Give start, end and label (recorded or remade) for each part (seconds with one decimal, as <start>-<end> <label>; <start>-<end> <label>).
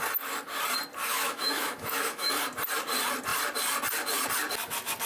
0.0-1.1 recorded; 1.1-2.3 remade; 2.3-5.1 recorded